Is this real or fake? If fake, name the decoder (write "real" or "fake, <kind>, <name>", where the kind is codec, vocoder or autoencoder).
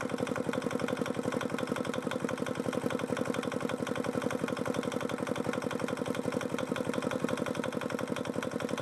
real